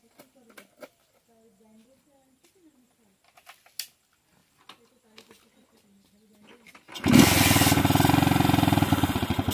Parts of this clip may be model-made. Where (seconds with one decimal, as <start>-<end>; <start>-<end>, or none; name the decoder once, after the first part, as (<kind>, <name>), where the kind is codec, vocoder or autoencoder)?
none